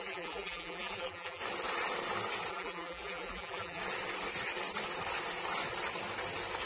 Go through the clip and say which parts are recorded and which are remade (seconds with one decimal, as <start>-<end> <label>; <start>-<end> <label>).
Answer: 0.0-1.4 remade; 1.4-2.5 recorded; 2.5-3.8 remade; 3.8-6.7 recorded